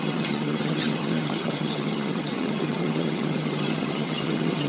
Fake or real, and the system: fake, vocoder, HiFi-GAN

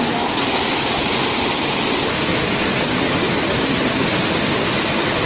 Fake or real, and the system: real